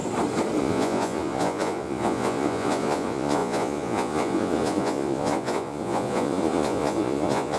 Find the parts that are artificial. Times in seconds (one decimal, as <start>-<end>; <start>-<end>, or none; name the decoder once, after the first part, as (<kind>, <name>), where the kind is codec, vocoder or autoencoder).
0.6-7.6 (vocoder, Vocos)